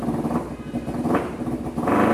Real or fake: real